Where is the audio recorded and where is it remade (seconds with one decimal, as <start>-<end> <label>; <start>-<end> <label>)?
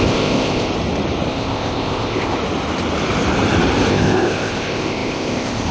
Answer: 0.0-0.7 remade; 0.7-1.3 recorded; 1.3-2.4 remade; 2.4-3.9 recorded; 3.9-5.7 remade